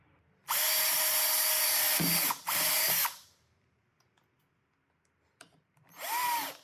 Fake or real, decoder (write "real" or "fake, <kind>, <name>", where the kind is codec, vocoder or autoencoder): real